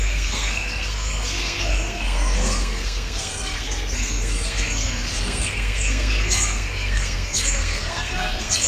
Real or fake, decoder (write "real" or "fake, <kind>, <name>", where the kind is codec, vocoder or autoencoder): fake, codec, SNAC